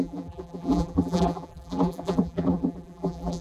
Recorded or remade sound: remade